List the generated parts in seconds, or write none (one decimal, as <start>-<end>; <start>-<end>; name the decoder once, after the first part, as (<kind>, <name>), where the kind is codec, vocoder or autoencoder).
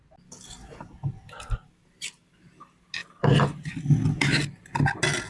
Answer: 3.0-3.7 (vocoder, BigVGAN v2)